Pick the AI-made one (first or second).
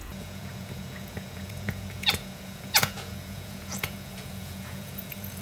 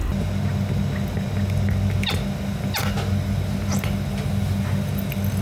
first